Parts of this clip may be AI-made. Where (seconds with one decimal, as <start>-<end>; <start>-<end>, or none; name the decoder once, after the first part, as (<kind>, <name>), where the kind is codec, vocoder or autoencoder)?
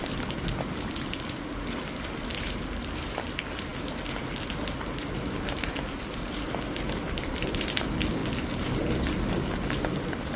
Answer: 0.0-3.7 (vocoder, BigVGAN v2); 5.1-8.2; 9.3-10.4